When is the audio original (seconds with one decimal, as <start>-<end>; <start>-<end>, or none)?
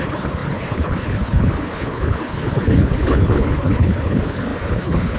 none